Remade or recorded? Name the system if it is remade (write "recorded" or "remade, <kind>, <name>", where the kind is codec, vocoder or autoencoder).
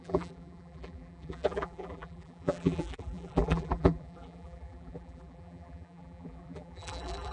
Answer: remade, vocoder, BigVGAN v2